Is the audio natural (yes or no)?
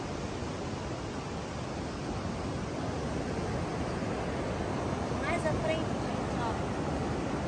yes